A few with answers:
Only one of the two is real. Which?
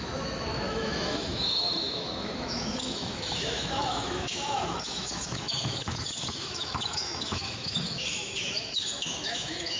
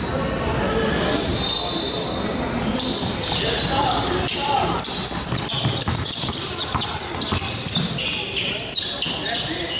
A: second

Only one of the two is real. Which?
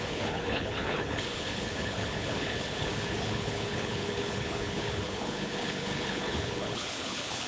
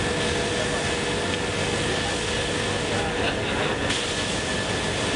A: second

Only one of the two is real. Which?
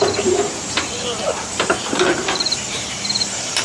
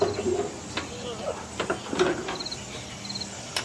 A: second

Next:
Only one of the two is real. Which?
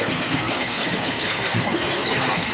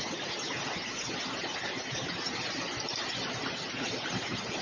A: second